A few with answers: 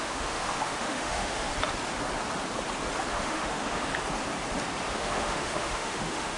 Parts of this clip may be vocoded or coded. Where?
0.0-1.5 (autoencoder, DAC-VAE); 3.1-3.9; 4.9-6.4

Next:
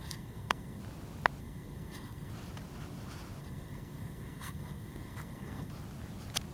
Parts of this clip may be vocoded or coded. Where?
0.0-0.8 (codec, SNAC); 1.4-2.3; 3.4-5.7

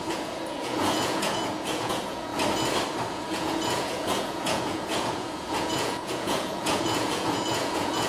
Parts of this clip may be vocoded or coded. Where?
0.0-2.3 (vocoder, Vocos); 3.1-8.1

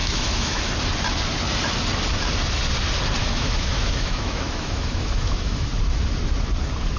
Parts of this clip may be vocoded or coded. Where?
0.0-0.6 (autoencoder, DAC-VAE); 3.2-5.7

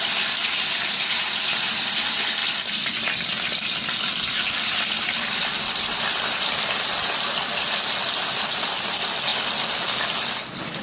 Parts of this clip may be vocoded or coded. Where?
none

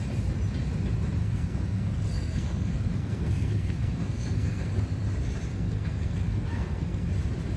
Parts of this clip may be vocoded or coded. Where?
1.2-4.8 (codec, SNAC); 5.5-7.1